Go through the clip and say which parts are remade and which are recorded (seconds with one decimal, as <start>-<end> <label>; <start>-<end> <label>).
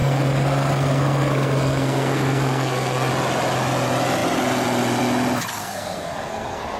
0.0-3.1 remade; 3.1-5.5 recorded; 5.5-6.8 remade